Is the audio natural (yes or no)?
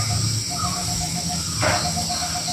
yes